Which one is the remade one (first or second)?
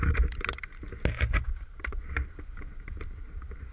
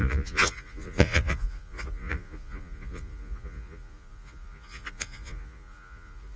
second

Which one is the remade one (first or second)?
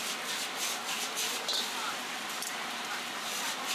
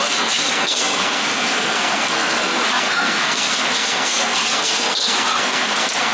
second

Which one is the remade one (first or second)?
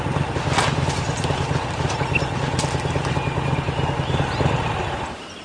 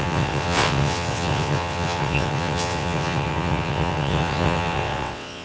second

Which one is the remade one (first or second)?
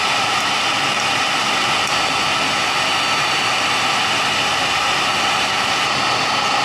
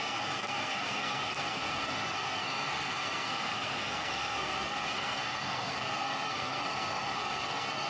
second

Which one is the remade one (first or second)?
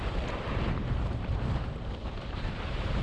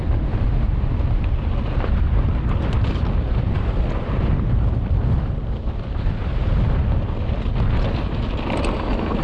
first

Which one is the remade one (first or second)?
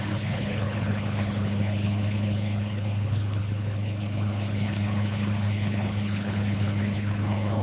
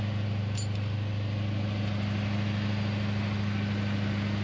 first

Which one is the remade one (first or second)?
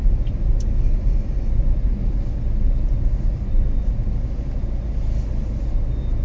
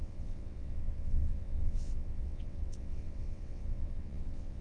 second